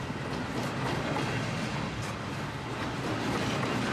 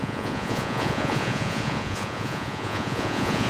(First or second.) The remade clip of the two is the second